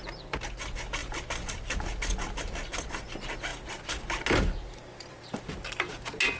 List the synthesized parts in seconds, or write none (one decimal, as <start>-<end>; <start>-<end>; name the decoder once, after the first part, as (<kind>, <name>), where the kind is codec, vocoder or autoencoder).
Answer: none